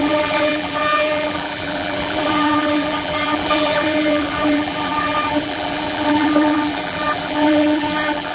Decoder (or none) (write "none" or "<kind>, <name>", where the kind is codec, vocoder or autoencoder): vocoder, BigVGAN v2